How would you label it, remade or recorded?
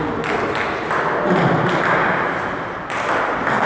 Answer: recorded